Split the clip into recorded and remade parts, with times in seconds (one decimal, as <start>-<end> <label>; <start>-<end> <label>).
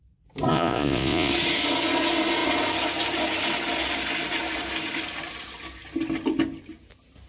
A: 0.0-0.5 recorded; 0.5-1.3 remade; 1.3-7.3 recorded